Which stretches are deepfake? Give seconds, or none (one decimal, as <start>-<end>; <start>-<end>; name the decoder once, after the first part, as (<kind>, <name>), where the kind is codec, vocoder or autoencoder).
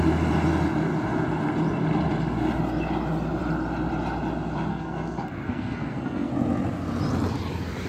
4.7-6.3 (codec, SNAC)